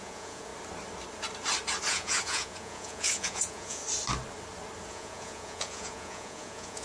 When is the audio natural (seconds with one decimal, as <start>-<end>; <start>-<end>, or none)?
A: 0.5-1.9; 3.8-4.9